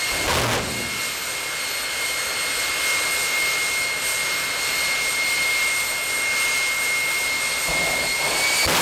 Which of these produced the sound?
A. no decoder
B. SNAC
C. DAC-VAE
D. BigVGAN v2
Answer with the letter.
A